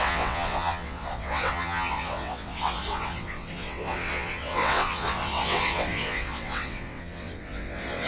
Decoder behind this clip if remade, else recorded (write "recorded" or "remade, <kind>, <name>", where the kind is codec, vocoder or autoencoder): remade, vocoder, WaveNeXt